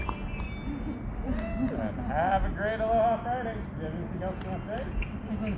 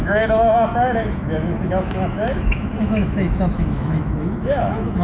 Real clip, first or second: first